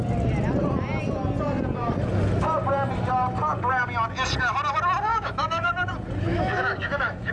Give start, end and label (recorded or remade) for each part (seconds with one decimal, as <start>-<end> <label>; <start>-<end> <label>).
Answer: 0.0-5.1 recorded; 5.1-5.7 remade; 5.7-6.3 recorded; 6.3-7.3 remade